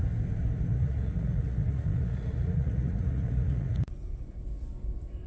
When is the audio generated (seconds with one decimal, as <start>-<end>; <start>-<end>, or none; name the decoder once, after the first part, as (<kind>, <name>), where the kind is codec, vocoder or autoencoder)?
0.7-3.9 (vocoder, Vocos)